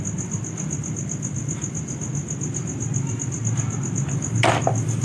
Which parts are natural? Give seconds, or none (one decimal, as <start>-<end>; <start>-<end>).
0.0-5.0